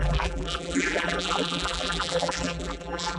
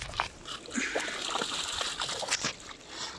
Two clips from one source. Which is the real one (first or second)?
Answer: second